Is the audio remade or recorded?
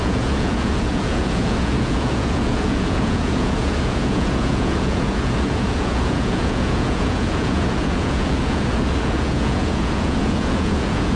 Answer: remade